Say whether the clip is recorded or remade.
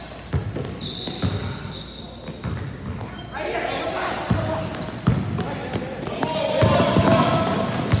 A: recorded